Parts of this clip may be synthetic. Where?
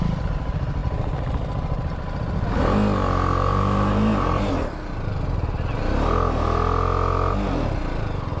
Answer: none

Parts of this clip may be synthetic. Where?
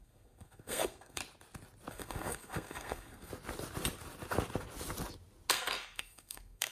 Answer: 0.0-1.2 (codec, SNAC); 1.9-3.3; 5.5-6.7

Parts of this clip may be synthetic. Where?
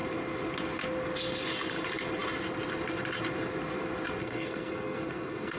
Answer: 4.2-5.6 (codec, SNAC)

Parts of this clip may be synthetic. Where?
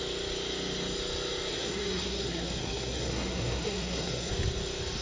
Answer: 1.5-4.3 (codec, SNAC)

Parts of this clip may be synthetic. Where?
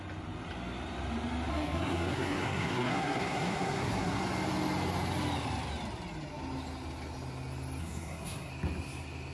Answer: 1.5-4.2 (codec, SNAC); 7.8-8.5